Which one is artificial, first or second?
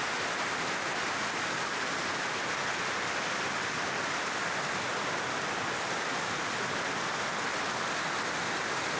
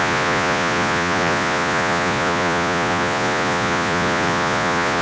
second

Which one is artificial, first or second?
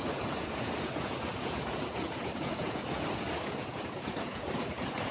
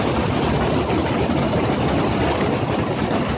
first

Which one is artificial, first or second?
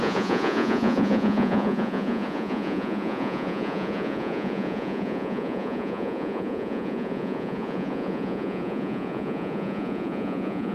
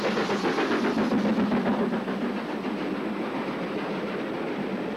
first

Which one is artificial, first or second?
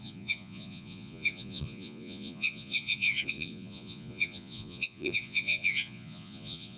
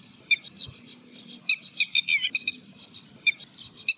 first